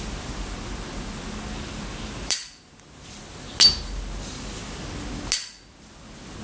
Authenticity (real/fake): real